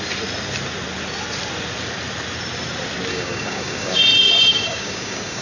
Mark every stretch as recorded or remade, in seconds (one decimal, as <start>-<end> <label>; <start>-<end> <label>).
0.0-3.1 recorded; 3.1-4.0 remade; 4.0-4.5 recorded; 4.5-5.4 remade